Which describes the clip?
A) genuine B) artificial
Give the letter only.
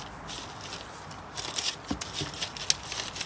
A